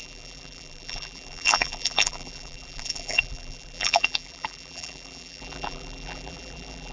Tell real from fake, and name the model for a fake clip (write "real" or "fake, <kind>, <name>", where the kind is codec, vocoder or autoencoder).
fake, vocoder, BigVGAN v2